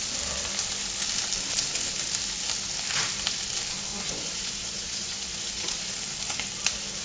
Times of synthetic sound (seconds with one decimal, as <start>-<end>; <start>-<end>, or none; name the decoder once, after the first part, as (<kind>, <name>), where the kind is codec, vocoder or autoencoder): 3.9-5.9 (vocoder, Vocos)